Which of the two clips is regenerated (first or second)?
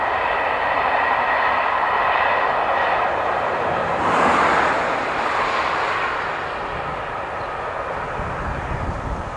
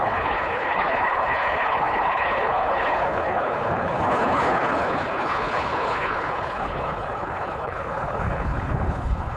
second